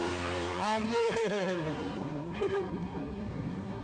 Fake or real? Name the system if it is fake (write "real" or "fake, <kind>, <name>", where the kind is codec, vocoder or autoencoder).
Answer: fake, codec, SNAC